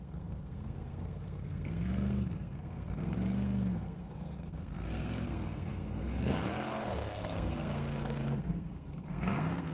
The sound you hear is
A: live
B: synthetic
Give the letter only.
B